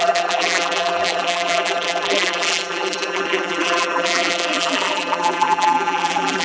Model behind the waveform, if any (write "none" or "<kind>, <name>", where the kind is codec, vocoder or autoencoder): vocoder, BigVGAN v2